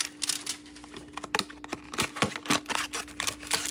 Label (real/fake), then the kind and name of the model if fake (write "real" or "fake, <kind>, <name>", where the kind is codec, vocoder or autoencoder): real